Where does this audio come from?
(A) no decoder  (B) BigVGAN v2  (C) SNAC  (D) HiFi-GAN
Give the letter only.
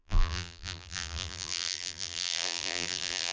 B